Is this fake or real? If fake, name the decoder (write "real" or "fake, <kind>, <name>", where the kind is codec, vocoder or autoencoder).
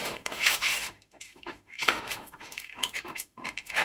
fake, autoencoder, DAC-VAE